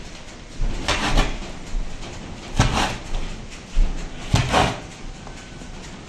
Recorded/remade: recorded